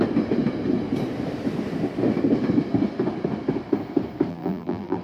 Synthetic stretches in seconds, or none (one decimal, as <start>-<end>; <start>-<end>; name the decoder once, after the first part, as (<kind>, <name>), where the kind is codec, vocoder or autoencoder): 4.3-5.0 (vocoder, BigVGAN v2)